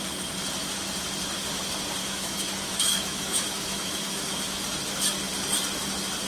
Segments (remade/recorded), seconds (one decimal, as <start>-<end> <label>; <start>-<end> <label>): 0.0-2.0 recorded; 2.0-4.6 remade; 4.6-6.3 recorded